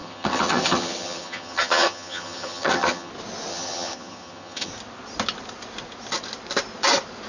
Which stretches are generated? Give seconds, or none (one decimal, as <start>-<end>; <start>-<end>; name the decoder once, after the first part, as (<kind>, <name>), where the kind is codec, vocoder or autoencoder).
0.0-3.1 (vocoder, HiFi-GAN); 3.5-4.7